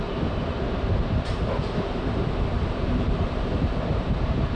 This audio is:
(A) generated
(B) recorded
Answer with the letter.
A